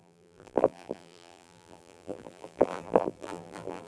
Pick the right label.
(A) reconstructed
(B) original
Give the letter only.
A